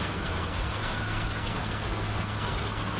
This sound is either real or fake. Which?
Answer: fake